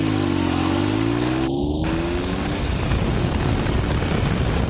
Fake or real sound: real